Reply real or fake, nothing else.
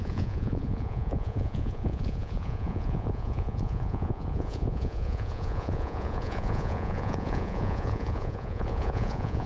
fake